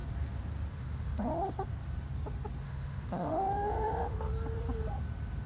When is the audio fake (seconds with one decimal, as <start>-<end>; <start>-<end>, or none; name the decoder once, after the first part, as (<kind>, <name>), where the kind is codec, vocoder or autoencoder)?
0.7-1.3 (autoencoder, DAC-VAE); 2.6-4.3